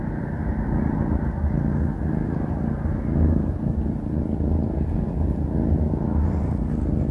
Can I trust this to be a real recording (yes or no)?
yes